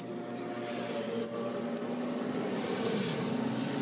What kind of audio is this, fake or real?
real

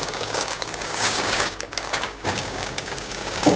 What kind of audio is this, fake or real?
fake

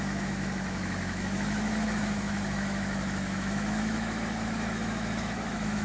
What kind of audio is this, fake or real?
fake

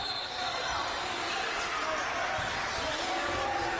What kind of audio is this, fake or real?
real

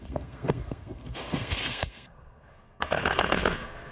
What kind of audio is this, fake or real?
fake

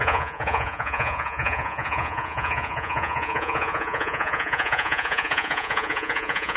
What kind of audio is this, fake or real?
fake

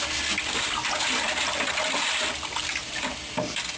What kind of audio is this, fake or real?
real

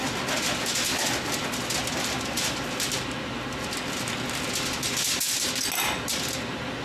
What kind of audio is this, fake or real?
real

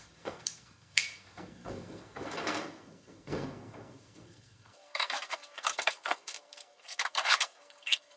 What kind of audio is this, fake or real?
fake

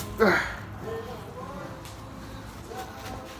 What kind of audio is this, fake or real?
real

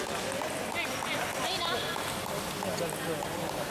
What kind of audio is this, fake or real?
real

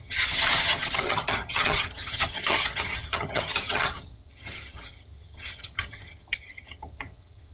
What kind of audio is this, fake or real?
fake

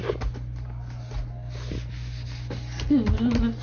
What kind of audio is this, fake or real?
real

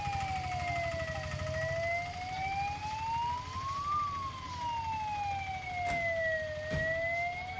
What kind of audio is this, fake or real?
real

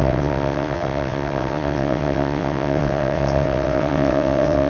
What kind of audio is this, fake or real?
fake